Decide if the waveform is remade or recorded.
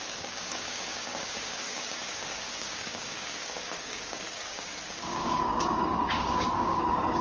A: remade